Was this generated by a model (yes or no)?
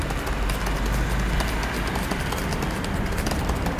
no